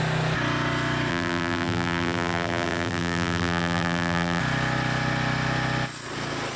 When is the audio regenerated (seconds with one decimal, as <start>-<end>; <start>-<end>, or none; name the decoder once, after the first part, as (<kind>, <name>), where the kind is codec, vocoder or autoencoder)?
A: 1.1-4.4 (vocoder, BigVGAN v2)